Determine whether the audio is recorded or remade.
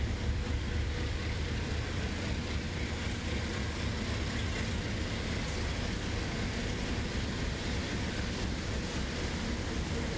recorded